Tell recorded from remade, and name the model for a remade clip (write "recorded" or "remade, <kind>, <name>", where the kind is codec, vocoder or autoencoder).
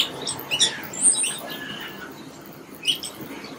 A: recorded